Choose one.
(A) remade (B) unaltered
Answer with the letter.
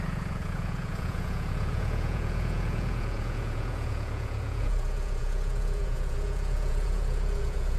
A